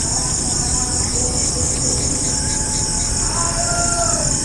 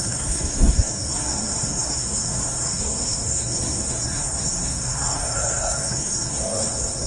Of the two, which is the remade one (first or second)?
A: second